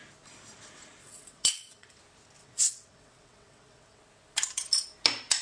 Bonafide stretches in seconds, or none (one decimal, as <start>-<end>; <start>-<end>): 0.0-1.0; 2.0-2.4; 4.0-5.4